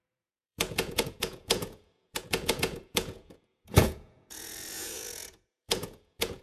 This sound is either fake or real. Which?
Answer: fake